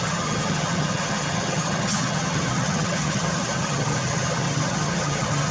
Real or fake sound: fake